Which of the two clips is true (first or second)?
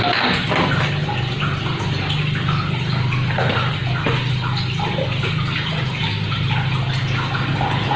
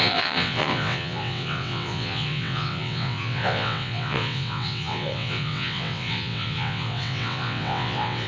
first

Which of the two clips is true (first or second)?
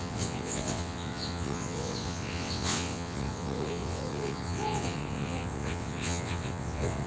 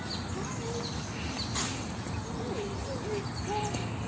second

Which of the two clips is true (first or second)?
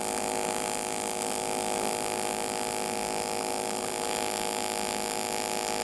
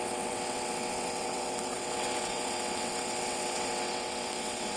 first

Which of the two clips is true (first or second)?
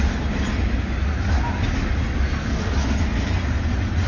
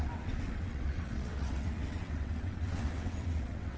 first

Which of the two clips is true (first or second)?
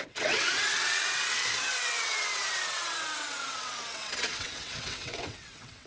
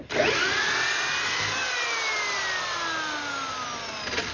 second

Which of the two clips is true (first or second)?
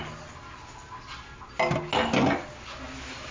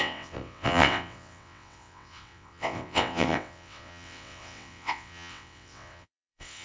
first